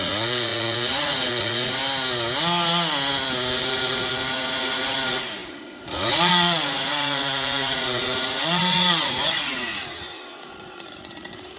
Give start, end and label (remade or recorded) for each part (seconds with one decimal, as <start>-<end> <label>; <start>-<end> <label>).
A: 0.0-1.8 remade; 1.8-3.5 recorded; 3.5-11.6 remade